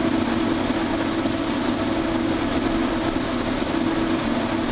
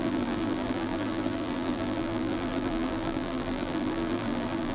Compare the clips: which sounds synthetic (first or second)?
second